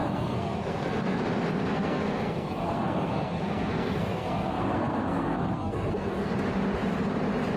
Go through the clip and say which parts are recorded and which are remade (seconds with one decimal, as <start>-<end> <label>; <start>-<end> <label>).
0.0-1.2 remade; 1.2-1.7 recorded; 1.7-6.3 remade; 6.3-7.6 recorded